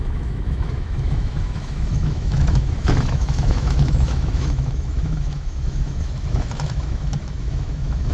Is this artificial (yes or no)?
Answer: yes